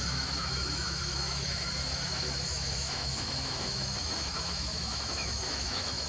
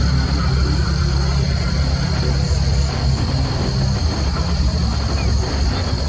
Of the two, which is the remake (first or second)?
first